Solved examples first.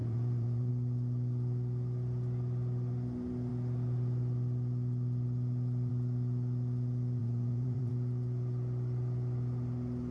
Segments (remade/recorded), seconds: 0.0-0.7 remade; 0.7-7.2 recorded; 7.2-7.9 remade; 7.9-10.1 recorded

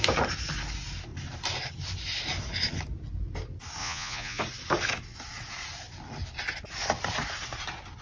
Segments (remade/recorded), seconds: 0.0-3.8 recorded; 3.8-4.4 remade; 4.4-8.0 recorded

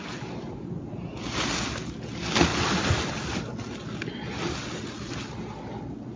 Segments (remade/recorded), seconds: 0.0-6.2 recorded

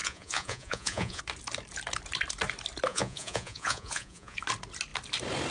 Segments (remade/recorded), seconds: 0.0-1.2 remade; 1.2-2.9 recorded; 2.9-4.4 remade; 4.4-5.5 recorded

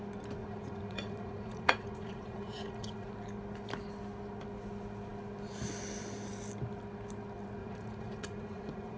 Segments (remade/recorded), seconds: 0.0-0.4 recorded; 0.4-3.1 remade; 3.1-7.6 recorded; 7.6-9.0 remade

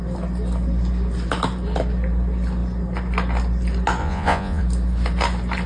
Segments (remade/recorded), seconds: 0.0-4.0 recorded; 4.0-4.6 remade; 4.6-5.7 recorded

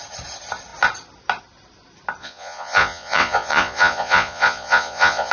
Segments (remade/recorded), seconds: 0.0-2.2 recorded; 2.2-5.3 remade